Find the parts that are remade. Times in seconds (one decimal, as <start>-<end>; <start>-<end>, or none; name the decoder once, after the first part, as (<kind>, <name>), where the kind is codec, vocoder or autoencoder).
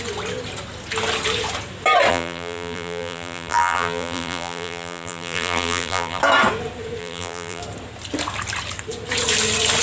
2.1-6.2 (vocoder, BigVGAN v2); 7.0-7.6